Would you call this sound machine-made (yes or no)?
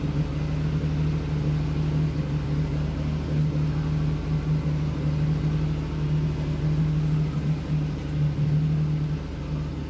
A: no